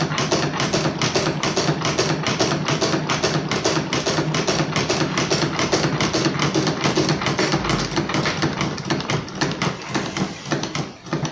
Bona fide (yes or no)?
yes